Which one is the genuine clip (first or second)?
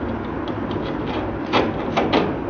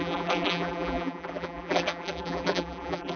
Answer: first